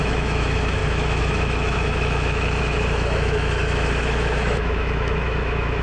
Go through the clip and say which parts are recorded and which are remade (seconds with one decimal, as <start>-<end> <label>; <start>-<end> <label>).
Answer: 0.0-5.8 remade